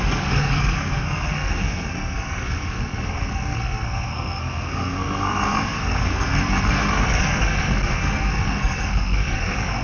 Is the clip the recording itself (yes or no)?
no